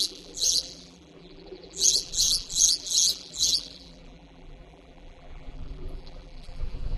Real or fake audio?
fake